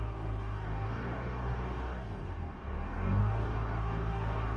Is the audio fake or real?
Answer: fake